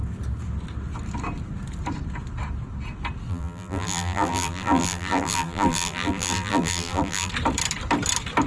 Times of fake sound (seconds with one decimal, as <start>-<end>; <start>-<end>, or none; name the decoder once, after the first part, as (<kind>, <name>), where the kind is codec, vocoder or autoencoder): 3.3-7.3 (vocoder, BigVGAN v2)

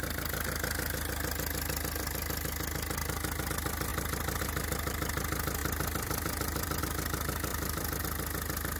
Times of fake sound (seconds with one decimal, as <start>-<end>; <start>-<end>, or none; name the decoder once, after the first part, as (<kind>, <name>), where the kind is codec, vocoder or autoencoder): 5.6-6.8 (vocoder, BigVGAN v2); 7.5-8.0